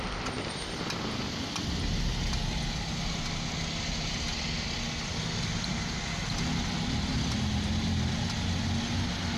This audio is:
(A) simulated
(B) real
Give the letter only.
B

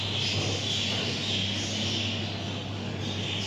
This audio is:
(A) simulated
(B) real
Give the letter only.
B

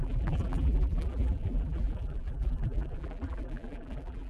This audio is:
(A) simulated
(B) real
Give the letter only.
A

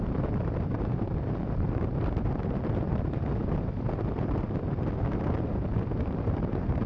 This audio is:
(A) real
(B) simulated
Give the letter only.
B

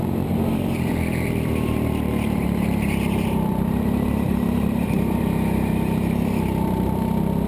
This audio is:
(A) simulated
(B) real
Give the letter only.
A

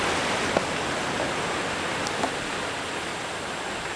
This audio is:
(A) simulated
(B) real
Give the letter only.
B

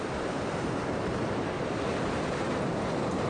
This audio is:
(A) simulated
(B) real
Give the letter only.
A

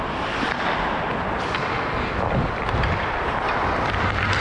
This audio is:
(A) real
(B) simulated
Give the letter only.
A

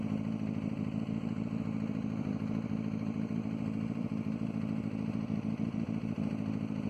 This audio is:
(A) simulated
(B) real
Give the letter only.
A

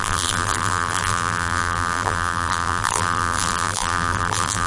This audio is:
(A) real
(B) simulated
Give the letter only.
B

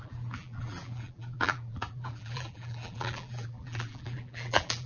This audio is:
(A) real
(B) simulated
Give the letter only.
B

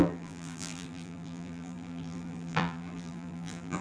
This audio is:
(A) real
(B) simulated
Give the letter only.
B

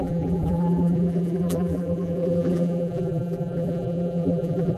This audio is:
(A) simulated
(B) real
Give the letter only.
A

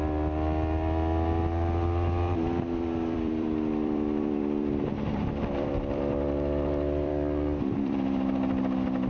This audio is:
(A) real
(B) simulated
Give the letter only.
B